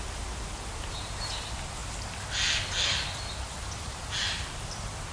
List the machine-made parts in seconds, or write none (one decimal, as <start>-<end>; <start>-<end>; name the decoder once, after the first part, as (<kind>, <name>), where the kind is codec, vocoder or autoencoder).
none